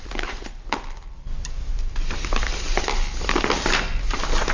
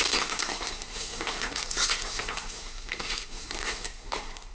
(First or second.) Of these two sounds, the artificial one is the second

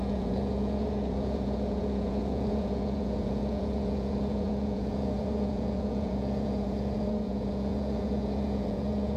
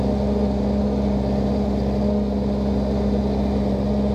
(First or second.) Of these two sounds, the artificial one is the first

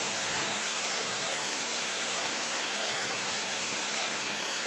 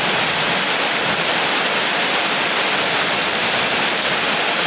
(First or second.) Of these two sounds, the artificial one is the first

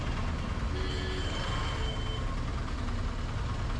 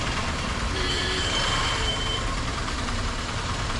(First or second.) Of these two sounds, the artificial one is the second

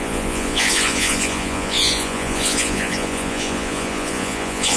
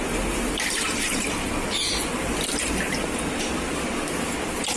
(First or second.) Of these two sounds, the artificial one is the first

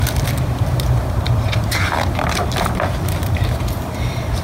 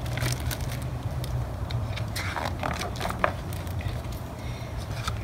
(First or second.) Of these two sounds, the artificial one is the first